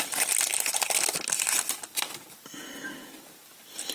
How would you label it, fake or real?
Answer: real